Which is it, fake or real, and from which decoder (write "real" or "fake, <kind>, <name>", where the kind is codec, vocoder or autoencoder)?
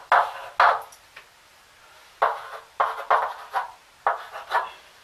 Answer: real